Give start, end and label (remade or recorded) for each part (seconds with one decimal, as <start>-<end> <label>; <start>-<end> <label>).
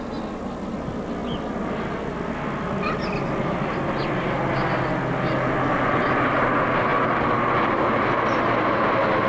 0.0-9.3 recorded